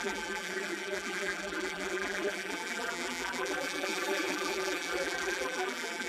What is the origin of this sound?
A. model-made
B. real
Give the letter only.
A